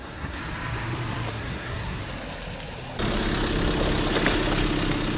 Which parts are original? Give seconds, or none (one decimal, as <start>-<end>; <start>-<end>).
0.4-1.3; 2.0-5.2